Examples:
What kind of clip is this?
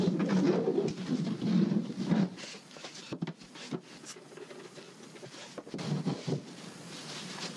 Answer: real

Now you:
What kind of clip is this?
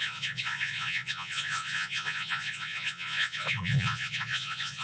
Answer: fake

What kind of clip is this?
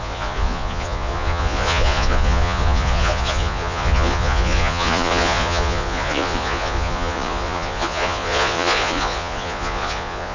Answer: fake